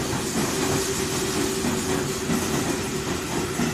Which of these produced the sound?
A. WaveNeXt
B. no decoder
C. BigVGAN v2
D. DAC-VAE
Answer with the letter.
B